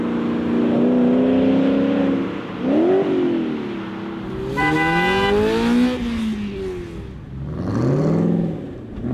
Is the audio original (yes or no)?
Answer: yes